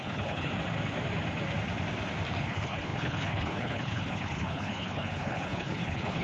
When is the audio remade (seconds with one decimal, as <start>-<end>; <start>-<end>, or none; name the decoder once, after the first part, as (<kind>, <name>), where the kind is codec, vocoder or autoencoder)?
0.0-0.5 (codec, HILCodec); 2.4-6.2